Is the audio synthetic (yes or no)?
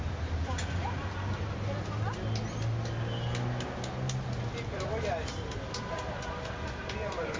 no